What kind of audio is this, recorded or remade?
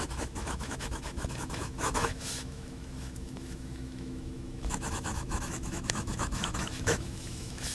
remade